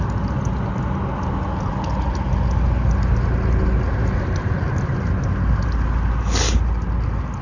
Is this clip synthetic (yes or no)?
no